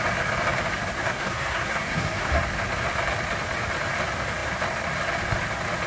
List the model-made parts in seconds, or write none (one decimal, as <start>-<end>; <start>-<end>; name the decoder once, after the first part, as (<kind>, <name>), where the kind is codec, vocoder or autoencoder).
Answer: 1.0-2.4 (codec, SNAC)